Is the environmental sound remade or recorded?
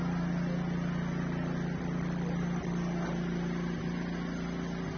recorded